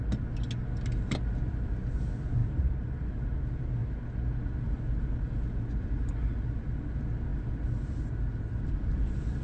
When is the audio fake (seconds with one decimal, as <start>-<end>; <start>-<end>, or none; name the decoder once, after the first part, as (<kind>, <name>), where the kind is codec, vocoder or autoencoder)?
2.4-3.0 (vocoder, BigVGAN v2)

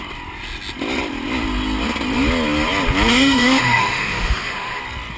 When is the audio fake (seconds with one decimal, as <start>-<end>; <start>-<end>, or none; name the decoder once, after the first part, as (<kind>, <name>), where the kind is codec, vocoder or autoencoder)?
3.1-4.8 (autoencoder, DAC-VAE)

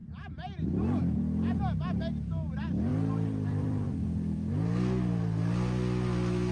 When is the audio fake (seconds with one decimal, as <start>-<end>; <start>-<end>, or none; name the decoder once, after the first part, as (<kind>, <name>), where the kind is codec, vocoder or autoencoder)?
2.9-4.5 (vocoder, BigVGAN v2)

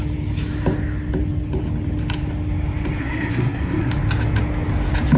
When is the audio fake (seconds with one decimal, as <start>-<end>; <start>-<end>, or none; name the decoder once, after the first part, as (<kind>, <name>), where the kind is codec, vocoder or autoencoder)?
3.0-3.9 (codec, SNAC)

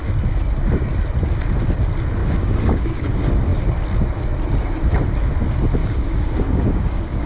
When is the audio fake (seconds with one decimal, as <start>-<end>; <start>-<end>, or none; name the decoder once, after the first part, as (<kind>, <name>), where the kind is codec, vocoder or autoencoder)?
2.2-3.0 (codec, DAC); 5.8-7.3

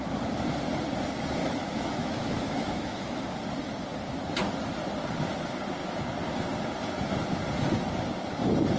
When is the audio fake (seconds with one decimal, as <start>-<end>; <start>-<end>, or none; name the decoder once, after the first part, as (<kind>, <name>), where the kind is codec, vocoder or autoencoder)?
1.4-3.2 (autoencoder, DAC-VAE)

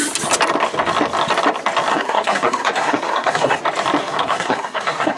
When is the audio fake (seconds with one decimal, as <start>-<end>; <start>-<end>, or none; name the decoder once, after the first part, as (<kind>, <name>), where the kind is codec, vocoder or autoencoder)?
1.9-3.6 (codec, SNAC); 4.0-5.2